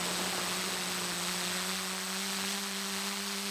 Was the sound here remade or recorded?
recorded